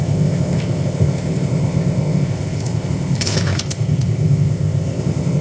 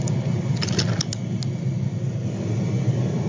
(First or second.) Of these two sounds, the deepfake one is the first